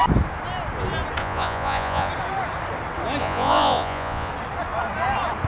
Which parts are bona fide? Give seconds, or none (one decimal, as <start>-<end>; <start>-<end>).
0.0-1.2; 2.1-3.2; 4.3-5.5